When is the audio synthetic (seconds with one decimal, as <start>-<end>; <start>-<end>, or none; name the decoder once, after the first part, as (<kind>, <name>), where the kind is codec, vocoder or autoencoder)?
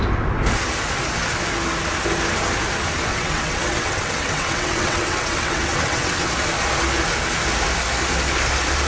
3.1-6.2 (vocoder, WaveNeXt)